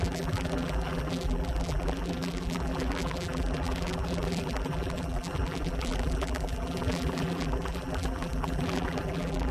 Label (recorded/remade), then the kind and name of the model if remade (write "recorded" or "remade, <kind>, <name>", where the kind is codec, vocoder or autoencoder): remade, vocoder, BigVGAN v2